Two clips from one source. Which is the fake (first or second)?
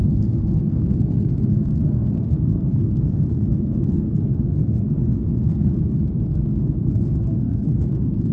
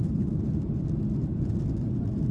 first